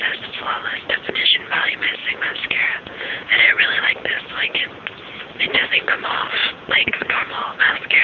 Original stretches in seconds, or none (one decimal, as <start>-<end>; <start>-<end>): 0.0-2.0; 3.8-6.4